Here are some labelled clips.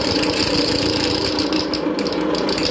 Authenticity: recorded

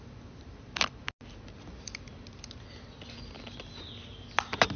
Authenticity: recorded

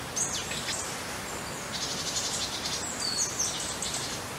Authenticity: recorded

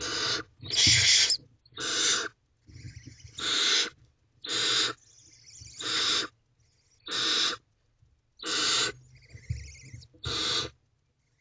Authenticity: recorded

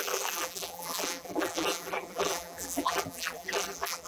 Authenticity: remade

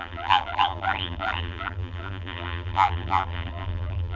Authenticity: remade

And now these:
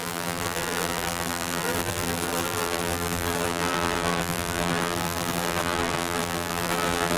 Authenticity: remade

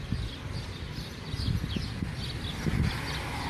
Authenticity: recorded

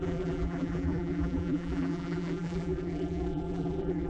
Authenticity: remade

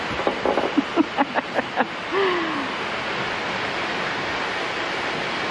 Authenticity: recorded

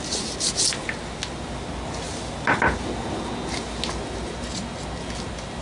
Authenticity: recorded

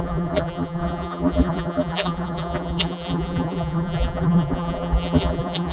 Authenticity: remade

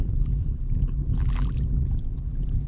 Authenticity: remade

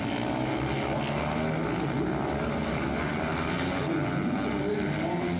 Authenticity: recorded